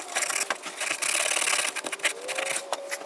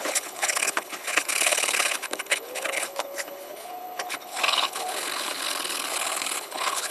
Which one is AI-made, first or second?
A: second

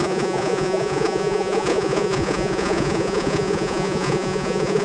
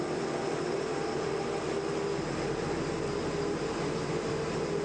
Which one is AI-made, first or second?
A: first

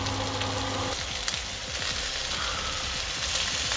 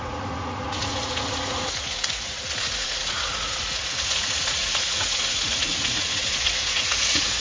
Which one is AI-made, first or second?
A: second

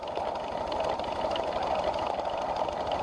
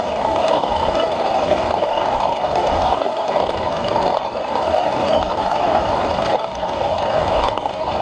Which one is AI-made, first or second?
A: second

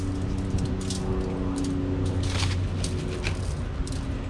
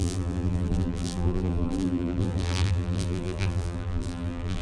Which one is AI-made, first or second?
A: second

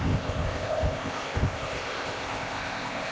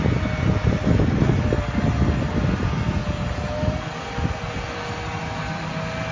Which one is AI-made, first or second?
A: first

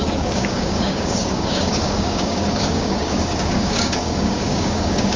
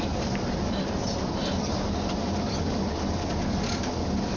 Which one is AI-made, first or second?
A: first